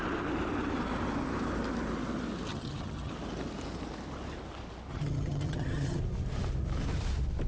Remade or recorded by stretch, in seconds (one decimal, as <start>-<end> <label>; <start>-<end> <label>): 0.0-2.5 recorded; 2.5-3.1 remade; 3.1-4.9 recorded; 4.9-6.0 remade; 6.0-7.5 recorded